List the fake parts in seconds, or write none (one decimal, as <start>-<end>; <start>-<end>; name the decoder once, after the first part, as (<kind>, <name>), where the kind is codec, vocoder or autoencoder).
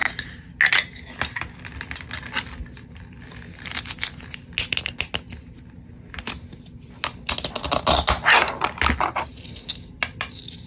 none